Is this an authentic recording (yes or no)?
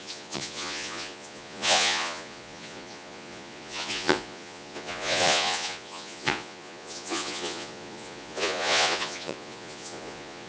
no